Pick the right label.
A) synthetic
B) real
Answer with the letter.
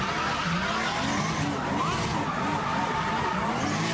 B